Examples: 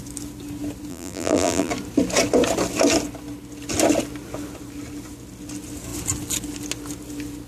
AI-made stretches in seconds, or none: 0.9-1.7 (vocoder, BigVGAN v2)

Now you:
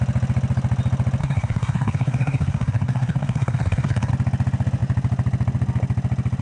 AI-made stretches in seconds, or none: 1.2-4.1 (codec, SNAC)

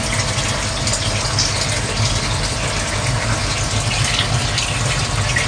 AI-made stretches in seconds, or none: none

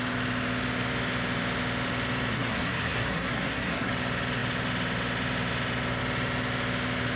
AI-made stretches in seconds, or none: 2.3-3.9 (codec, SNAC)

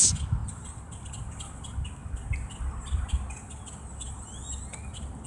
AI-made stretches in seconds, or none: none